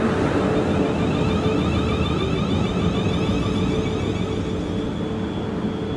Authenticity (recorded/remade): recorded